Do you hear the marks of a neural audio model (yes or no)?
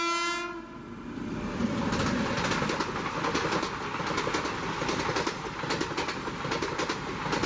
no